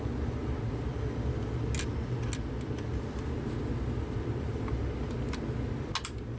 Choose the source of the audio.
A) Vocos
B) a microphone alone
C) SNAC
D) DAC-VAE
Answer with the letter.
B